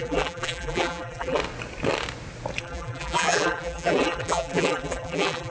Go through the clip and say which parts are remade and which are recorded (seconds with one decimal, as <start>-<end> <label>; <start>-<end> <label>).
0.0-1.4 remade; 1.4-2.6 recorded; 2.6-5.5 remade